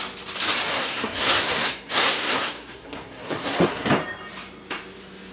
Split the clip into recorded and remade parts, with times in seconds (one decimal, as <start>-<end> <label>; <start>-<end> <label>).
0.0-0.7 recorded; 0.7-3.9 remade; 3.9-5.3 recorded